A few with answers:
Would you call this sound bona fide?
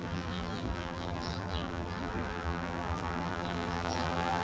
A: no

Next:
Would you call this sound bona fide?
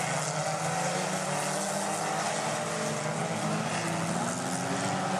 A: yes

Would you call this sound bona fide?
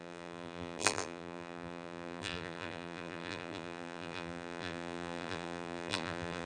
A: no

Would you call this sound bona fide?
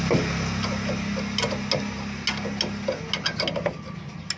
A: yes